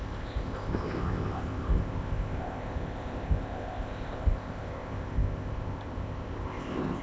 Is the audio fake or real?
fake